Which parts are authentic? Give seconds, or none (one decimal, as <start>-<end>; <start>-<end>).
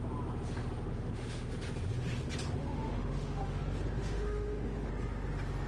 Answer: 0.0-0.9; 1.5-2.6; 3.6-4.0; 4.9-5.7